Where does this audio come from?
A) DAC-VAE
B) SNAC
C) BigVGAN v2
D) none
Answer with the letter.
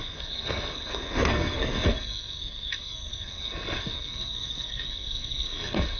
B